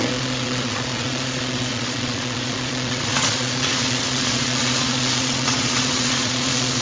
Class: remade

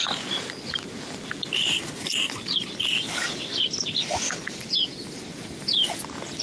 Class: recorded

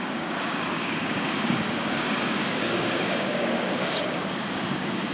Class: remade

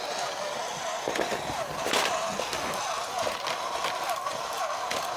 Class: recorded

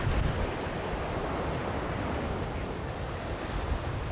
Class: recorded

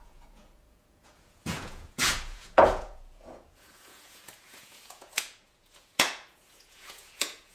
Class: remade